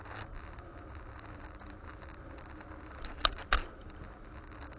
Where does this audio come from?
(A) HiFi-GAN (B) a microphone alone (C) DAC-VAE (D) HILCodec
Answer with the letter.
B